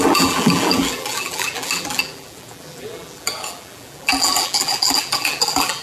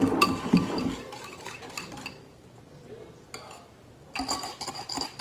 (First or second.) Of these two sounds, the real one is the second